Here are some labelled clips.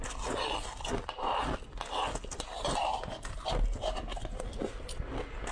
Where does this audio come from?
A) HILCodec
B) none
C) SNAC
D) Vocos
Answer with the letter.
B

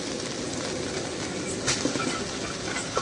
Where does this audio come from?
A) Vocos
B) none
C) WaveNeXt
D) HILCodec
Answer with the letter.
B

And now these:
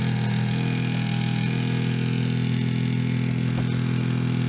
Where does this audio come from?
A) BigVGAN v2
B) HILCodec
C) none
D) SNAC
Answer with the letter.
C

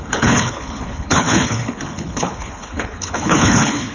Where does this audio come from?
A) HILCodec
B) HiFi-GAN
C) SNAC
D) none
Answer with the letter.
A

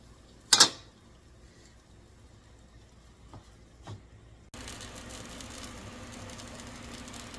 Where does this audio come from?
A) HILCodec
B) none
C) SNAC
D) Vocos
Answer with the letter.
B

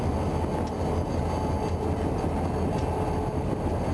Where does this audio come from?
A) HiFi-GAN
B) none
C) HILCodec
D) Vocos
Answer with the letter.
B